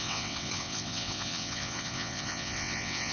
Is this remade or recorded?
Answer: remade